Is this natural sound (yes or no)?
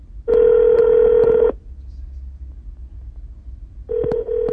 yes